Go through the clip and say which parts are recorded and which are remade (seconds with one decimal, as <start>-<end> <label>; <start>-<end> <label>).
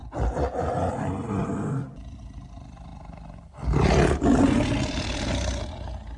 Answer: 0.0-6.2 recorded